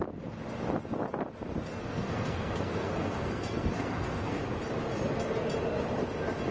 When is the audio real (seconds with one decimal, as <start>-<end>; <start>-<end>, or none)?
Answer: 0.0-1.8; 4.4-6.5